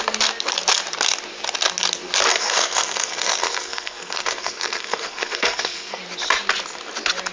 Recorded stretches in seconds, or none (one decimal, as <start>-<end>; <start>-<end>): 0.0-2.3; 6.0-7.3